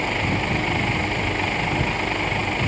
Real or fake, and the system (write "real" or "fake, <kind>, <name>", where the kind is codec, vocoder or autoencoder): real